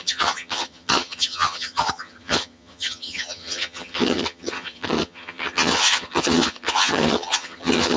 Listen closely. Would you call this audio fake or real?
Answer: fake